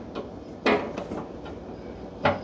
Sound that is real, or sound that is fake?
real